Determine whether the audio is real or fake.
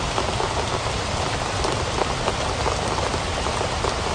real